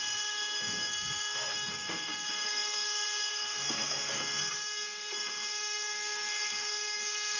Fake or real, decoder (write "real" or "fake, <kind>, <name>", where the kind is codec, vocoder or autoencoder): fake, codec, SNAC